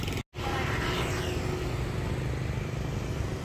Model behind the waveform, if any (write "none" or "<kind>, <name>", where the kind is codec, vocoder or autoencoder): none